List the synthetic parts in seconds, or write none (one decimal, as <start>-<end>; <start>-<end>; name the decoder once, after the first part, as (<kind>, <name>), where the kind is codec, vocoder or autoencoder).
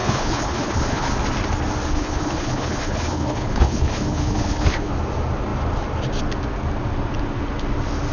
0.0-1.1 (codec, HILCodec); 1.9-4.9